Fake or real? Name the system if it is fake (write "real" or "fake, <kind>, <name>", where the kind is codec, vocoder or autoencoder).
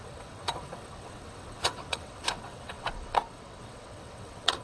fake, vocoder, WaveNeXt